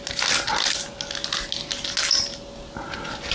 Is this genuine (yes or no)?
yes